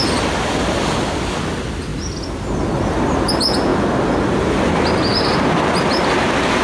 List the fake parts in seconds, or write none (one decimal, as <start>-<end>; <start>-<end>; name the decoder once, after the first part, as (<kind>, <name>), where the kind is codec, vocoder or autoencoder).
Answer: none